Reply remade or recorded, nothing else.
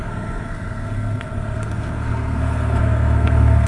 remade